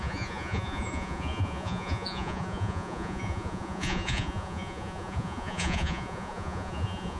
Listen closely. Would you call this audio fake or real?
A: fake